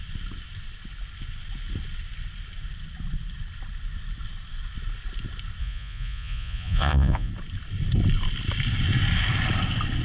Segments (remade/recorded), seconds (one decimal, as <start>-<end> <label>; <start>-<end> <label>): 0.0-5.6 recorded; 5.6-7.3 remade; 7.3-10.0 recorded